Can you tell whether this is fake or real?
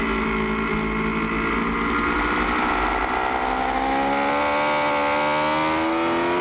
real